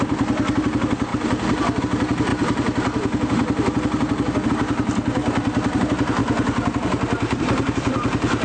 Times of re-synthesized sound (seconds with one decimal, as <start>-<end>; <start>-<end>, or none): 5.2-5.8